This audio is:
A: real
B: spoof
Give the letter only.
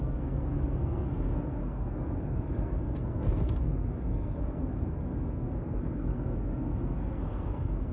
B